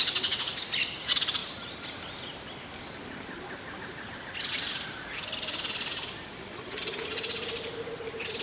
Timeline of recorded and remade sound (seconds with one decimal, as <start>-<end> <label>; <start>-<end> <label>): 0.0-6.3 recorded; 6.3-6.8 remade; 6.8-8.4 recorded